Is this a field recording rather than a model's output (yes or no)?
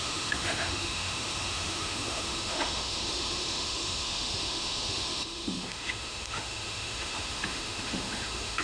no